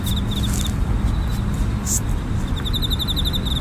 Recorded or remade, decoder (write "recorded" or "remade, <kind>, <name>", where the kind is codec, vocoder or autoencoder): recorded